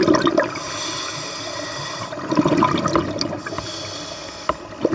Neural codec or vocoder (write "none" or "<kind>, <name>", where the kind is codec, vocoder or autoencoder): none